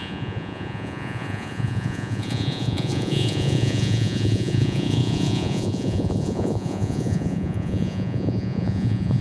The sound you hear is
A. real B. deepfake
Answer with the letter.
B